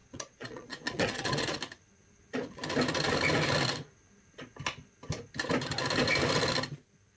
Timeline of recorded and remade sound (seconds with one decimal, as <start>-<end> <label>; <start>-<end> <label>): 0.0-1.6 remade; 1.6-7.2 recorded